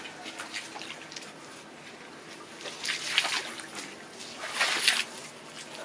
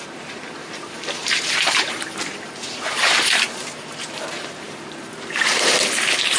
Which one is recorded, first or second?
first